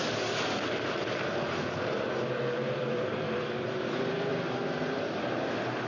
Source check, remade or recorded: remade